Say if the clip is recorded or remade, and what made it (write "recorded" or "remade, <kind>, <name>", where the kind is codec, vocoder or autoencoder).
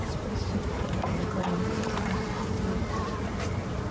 remade, vocoder, BigVGAN v2